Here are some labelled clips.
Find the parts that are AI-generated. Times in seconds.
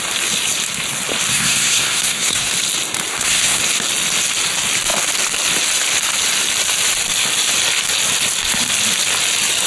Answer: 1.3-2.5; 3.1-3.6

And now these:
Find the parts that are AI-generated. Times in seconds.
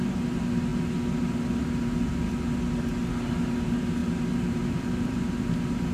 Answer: 4.0-5.2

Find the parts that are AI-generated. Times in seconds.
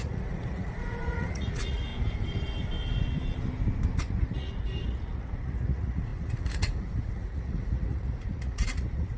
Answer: 0.0-1.9; 4.0-9.2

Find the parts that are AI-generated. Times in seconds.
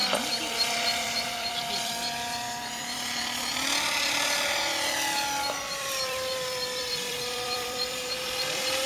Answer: 0.0-3.5; 5.6-8.9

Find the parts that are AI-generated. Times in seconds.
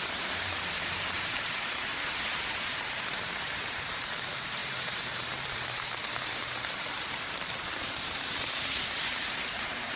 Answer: 0.0-10.0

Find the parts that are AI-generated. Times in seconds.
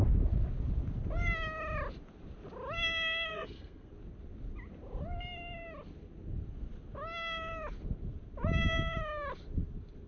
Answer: 3.3-3.9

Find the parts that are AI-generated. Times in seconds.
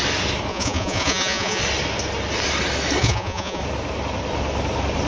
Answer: 0.5-1.6; 3.0-3.6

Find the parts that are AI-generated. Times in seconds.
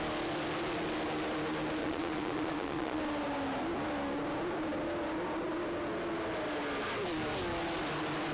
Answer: 1.8-3.0